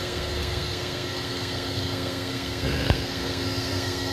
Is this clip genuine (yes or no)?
no